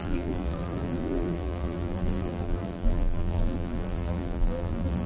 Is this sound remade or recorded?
remade